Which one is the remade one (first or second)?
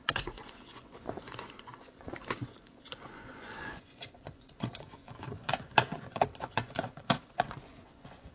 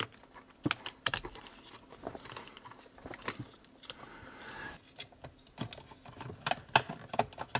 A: first